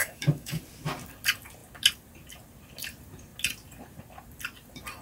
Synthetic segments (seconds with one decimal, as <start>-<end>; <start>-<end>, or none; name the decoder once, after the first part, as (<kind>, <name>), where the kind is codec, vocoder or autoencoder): 0.0-0.6 (autoencoder, DAC-VAE)